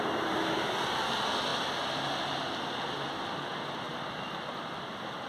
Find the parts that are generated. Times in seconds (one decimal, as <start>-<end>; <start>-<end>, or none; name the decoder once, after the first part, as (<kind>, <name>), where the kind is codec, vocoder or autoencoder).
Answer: none